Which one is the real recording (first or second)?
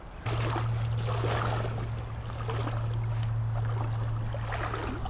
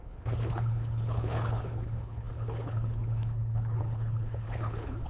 first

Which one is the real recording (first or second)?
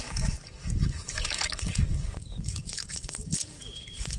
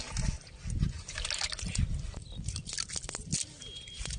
second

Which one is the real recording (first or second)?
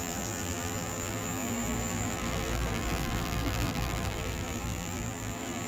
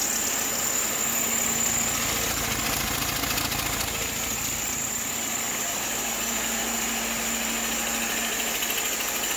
second